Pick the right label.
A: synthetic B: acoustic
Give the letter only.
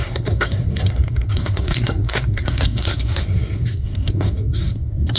A